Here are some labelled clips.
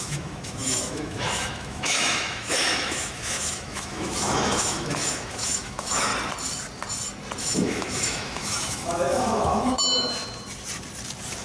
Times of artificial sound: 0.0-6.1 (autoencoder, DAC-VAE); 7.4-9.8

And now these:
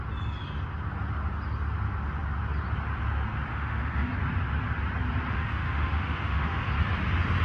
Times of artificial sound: 3.5-4.1 (autoencoder, DAC-VAE); 5.3-6.7

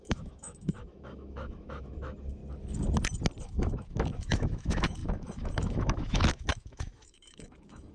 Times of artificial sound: 0.0-2.4 (autoencoder, DAC-VAE); 3.4-7.9